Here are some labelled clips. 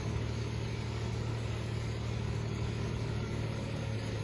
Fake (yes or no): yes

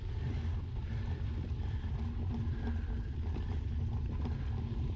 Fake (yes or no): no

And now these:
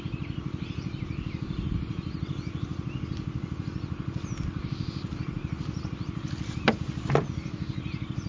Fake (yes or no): no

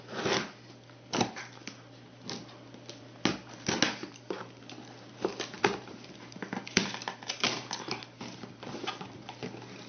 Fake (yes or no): no